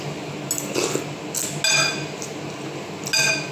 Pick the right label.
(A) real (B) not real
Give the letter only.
A